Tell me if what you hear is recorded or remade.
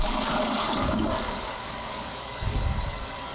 remade